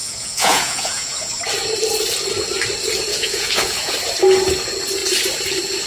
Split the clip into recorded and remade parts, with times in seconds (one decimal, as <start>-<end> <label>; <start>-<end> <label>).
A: 0.0-1.4 remade; 1.4-3.1 recorded; 3.1-3.9 remade; 3.9-5.9 recorded